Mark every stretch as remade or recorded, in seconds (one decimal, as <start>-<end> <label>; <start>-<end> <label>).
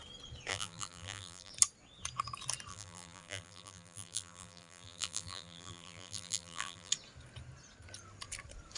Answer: 0.0-0.5 recorded; 0.5-1.5 remade; 1.5-2.7 recorded; 2.7-6.9 remade; 6.9-8.8 recorded